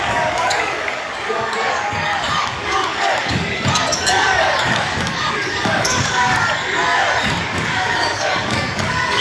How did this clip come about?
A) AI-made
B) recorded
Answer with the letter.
A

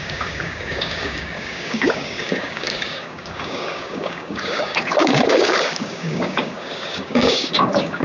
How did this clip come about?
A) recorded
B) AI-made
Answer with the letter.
B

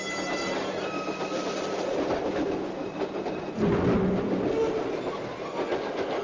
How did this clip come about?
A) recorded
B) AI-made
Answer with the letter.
A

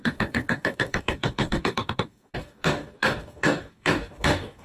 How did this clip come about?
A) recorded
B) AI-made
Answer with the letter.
B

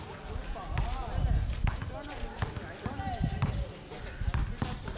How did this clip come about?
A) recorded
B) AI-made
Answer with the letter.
A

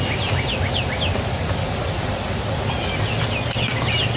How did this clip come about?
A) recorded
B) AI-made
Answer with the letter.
A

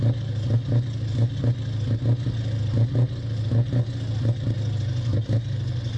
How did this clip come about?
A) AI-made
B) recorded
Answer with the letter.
B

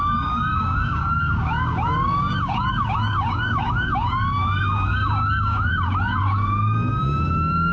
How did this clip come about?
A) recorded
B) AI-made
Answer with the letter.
B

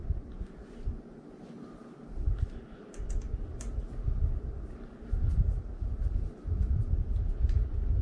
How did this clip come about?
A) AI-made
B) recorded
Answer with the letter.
B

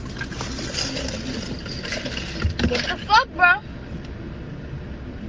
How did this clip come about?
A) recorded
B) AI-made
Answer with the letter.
A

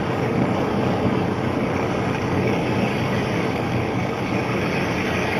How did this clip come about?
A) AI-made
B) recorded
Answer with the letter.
A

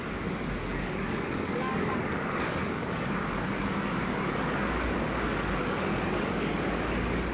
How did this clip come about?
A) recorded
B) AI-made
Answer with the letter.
B